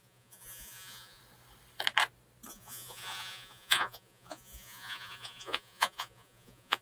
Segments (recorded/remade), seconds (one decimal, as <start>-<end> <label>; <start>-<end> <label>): 0.0-1.2 remade; 1.2-2.5 recorded; 2.5-6.8 remade